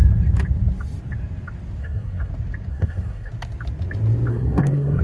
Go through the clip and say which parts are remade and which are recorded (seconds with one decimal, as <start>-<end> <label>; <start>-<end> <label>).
0.0-1.8 recorded; 1.8-2.3 remade; 2.3-2.7 recorded; 2.7-3.3 remade; 3.3-4.3 recorded; 4.3-5.0 remade